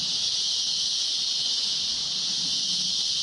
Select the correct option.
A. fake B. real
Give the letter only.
B